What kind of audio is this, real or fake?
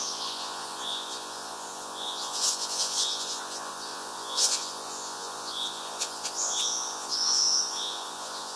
fake